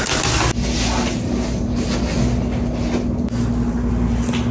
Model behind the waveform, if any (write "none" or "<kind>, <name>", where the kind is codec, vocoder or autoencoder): none